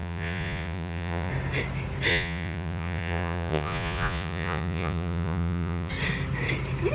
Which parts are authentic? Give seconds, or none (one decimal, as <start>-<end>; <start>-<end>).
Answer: 1.3-2.1; 5.9-6.9